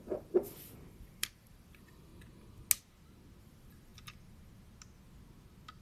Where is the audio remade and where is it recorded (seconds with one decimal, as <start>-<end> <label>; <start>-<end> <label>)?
0.0-2.1 remade; 2.1-3.4 recorded; 3.4-3.9 remade; 3.9-5.8 recorded